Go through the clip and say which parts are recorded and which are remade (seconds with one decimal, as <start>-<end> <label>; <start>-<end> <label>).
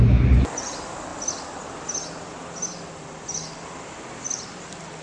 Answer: 0.0-5.0 recorded